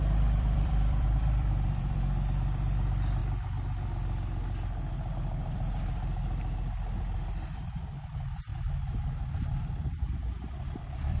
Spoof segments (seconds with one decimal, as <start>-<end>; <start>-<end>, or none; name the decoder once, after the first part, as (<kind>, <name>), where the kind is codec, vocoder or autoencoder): 0.0-3.2 (vocoder, BigVGAN v2); 5.1-8.5; 9.3-11.2